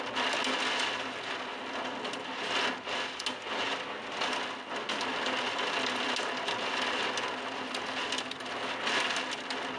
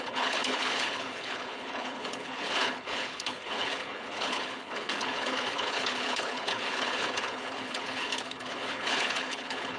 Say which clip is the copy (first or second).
second